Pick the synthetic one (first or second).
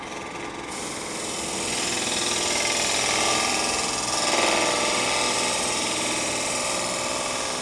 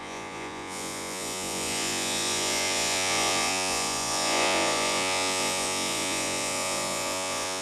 second